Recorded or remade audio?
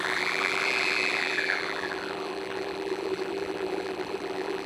remade